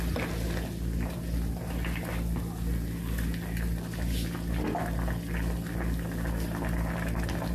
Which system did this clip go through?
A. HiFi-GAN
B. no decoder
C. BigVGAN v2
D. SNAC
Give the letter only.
B